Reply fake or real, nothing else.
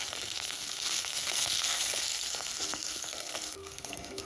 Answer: fake